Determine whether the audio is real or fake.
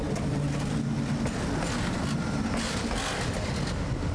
real